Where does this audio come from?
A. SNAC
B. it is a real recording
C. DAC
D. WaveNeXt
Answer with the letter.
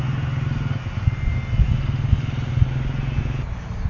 B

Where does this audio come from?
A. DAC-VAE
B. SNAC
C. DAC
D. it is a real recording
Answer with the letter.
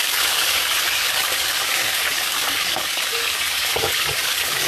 C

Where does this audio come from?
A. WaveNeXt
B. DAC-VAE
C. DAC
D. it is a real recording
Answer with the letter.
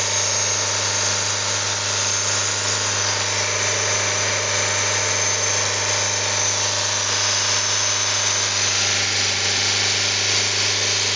D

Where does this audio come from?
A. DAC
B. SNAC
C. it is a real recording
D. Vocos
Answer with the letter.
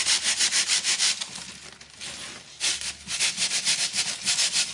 C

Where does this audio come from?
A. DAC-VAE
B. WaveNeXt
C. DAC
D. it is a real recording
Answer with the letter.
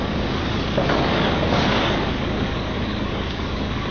C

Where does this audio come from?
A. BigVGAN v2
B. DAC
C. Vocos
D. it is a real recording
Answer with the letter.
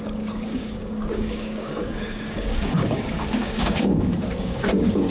B